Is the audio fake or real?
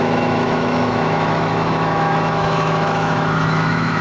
fake